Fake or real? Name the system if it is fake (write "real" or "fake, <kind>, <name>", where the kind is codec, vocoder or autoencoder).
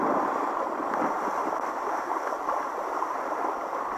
fake, vocoder, BigVGAN v2